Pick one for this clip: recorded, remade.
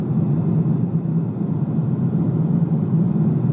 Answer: recorded